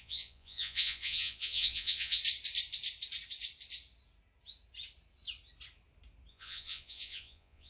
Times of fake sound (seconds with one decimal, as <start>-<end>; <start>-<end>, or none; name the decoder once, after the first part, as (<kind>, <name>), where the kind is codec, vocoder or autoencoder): 0.0-2.2 (vocoder, Vocos); 6.3-7.7

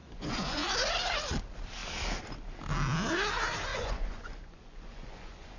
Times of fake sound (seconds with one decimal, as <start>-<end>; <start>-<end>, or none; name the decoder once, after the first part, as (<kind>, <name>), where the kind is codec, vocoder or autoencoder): 0.0-0.7 (vocoder, Vocos); 3.7-5.6

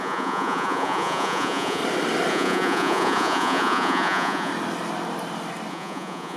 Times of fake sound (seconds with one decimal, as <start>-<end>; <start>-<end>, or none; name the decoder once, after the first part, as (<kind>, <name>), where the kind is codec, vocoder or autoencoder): 0.0-1.8 (vocoder, Vocos); 2.3-4.5; 5.7-6.4

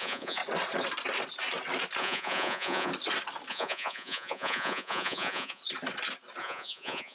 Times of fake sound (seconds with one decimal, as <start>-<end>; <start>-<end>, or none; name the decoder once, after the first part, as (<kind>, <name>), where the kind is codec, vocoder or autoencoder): 0.0-0.4 (vocoder, Vocos); 2.0-2.9; 3.5-5.6; 6.4-7.1

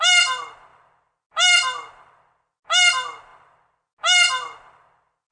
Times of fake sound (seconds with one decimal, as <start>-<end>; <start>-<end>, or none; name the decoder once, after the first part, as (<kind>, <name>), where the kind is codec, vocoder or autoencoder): none